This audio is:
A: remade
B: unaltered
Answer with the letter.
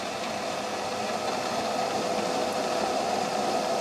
B